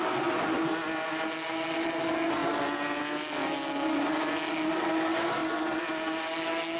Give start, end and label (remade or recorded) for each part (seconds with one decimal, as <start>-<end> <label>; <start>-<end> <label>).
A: 0.0-6.8 recorded